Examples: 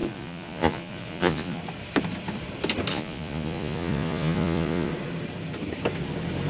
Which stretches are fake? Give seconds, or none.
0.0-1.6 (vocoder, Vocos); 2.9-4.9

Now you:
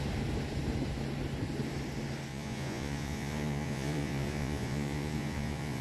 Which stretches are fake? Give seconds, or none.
2.3-5.8 (vocoder, Vocos)

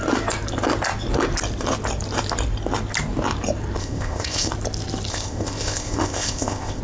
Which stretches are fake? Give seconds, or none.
3.8-4.5 (codec, ZipCodec); 5.1-6.8

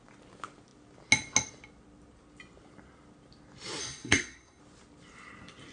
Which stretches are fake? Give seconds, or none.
3.8-4.6 (codec, SNAC)

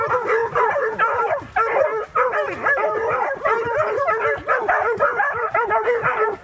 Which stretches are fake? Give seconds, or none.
none